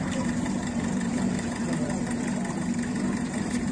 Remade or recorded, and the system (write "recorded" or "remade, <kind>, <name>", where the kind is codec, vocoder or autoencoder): remade, vocoder, BigVGAN v2